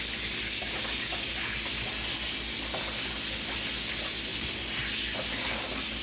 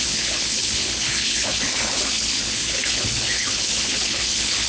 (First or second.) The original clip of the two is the first